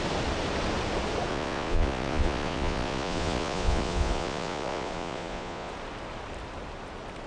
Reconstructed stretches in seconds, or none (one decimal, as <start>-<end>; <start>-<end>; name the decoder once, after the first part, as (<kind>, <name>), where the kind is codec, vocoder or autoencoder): 1.3-5.7 (vocoder, Vocos)